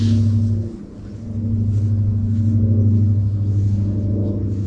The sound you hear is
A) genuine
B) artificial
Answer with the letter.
A